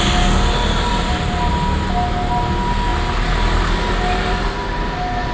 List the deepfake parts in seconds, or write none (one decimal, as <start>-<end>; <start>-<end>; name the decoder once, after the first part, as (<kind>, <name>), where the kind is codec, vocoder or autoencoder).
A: 0.9-1.5 (vocoder, BigVGAN v2)